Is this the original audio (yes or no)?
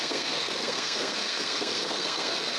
no